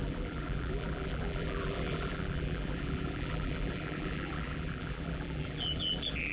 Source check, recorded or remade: remade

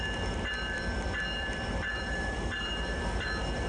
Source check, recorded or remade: remade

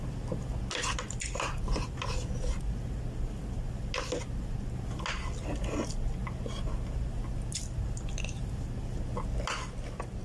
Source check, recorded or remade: recorded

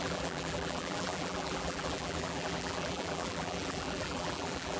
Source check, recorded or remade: remade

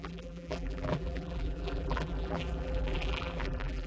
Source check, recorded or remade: remade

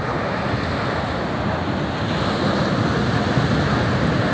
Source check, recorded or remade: recorded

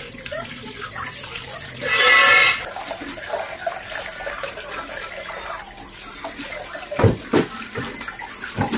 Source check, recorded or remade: recorded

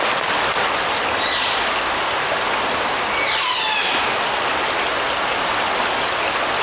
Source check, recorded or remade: recorded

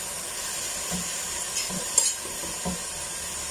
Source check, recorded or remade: recorded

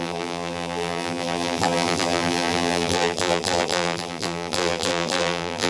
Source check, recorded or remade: remade